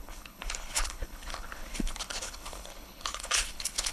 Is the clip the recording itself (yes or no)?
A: no